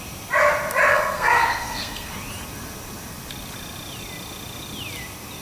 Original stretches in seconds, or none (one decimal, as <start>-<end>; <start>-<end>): 0.0-0.9; 2.1-5.4